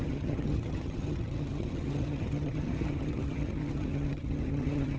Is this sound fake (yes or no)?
yes